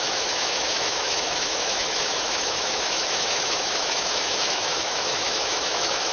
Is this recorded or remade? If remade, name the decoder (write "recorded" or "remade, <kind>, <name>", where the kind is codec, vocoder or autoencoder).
remade, autoencoder, DAC-VAE